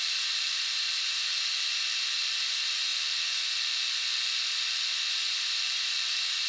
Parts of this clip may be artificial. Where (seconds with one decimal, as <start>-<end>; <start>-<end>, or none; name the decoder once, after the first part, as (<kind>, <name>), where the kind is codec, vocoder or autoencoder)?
0.0-2.9 (vocoder, BigVGAN v2); 5.1-6.5